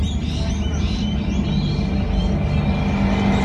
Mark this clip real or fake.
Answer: real